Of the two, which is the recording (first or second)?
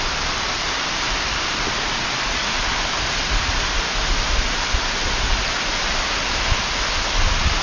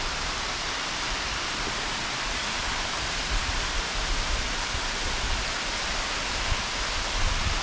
first